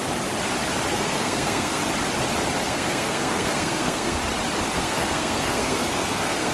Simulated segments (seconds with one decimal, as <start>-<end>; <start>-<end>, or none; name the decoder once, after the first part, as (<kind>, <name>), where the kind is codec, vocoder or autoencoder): 0.9-1.8 (codec, SNAC); 2.6-4.2; 4.8-6.5